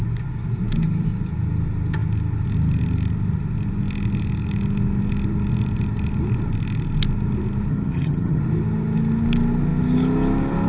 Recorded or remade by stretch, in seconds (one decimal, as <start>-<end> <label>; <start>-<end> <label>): 0.0-7.7 recorded; 7.7-8.4 remade; 8.4-10.7 recorded